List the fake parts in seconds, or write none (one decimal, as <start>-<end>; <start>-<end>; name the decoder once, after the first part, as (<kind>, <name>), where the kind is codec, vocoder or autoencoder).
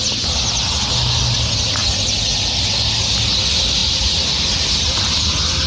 3.8-5.2 (vocoder, BigVGAN v2)